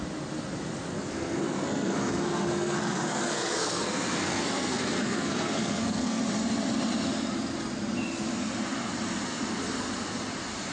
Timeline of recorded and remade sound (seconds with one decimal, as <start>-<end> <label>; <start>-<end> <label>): 0.0-0.9 recorded; 0.9-6.2 remade; 6.2-10.7 recorded